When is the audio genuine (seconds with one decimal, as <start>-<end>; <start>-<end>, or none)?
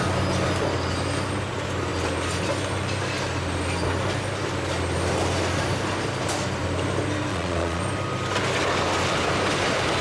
0.0-7.3; 7.8-10.0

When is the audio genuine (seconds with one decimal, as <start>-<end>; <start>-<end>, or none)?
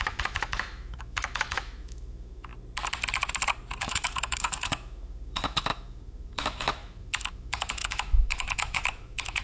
2.5-3.8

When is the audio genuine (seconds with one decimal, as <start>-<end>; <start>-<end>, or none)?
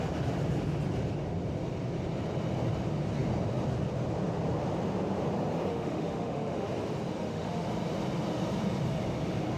0.0-5.7; 6.7-7.2; 7.7-9.6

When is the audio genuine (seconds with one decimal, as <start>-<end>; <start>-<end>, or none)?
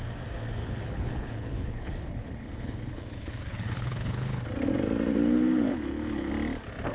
0.0-0.6; 4.4-5.1; 6.3-6.9